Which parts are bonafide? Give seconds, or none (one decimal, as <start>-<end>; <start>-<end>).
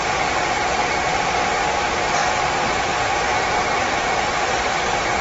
0.0-5.2